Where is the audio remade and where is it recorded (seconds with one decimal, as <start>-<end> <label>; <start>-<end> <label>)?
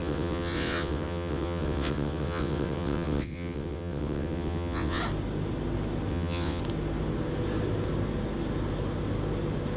0.0-5.0 remade; 5.0-6.1 recorded; 6.1-6.6 remade; 6.6-9.8 recorded